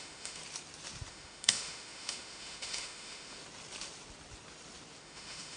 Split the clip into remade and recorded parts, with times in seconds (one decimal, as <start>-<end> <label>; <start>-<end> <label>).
0.0-0.4 remade; 0.4-1.1 recorded; 1.1-3.4 remade; 3.4-5.0 recorded; 5.0-5.6 remade